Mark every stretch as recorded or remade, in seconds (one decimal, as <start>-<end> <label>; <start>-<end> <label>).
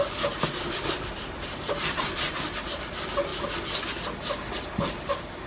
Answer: 0.0-3.3 remade; 3.3-5.5 recorded